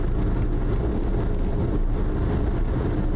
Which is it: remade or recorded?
recorded